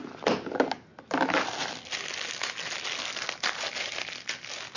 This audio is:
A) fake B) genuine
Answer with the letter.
B